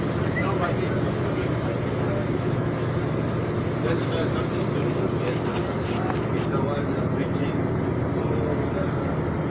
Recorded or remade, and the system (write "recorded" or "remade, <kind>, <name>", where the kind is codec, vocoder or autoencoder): recorded